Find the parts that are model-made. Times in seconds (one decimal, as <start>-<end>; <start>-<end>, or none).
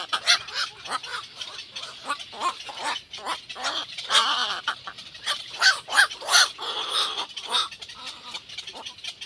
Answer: 3.8-4.6; 5.0-7.1